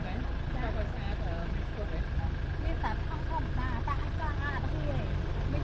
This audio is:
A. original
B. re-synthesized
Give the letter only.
A